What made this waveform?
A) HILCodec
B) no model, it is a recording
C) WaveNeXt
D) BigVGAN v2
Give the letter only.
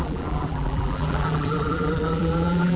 D